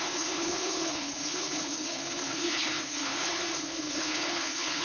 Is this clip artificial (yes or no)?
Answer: yes